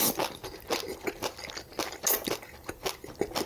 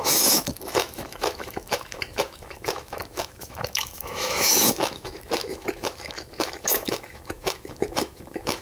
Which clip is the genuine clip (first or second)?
first